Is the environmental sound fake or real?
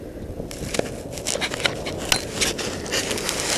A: real